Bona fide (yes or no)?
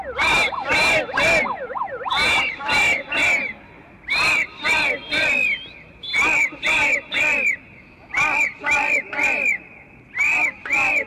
yes